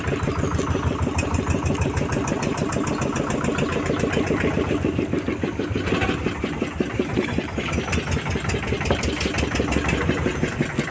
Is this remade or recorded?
recorded